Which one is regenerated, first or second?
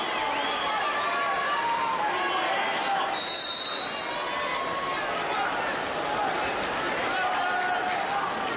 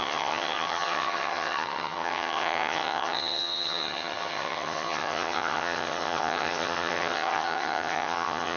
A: second